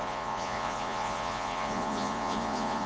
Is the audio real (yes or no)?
no